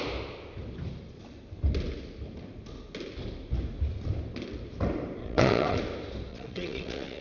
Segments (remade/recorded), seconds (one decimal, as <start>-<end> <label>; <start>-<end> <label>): 0.0-5.2 recorded; 5.2-5.8 remade; 5.8-6.3 recorded; 6.3-7.2 remade